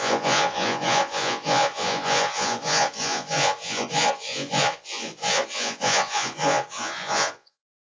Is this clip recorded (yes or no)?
no